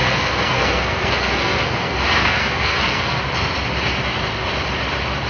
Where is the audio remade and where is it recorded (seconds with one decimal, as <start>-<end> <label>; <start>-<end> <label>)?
0.0-3.2 remade; 3.2-5.3 recorded